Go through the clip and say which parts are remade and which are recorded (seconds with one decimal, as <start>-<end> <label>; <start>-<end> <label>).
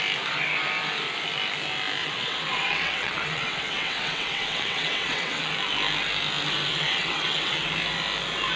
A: 0.0-2.0 recorded; 2.0-5.5 remade; 5.5-6.7 recorded; 6.7-7.7 remade; 7.7-8.6 recorded